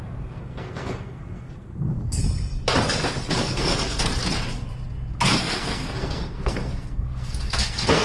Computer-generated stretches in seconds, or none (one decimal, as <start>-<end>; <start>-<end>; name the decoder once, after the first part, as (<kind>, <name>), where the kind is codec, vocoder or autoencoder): 0.0-2.2 (codec, SNAC); 3.4-4.1; 5.4-8.0